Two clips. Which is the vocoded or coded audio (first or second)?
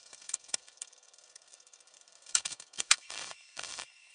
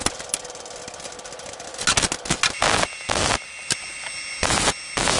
first